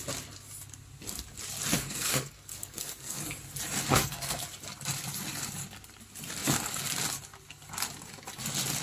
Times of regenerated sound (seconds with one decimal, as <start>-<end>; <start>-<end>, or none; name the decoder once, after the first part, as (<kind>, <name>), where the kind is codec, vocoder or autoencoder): 1.7-3.2 (codec, SNAC); 3.9-4.4